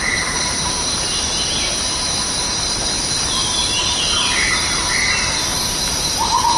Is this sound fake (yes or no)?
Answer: yes